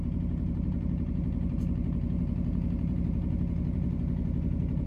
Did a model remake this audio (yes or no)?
yes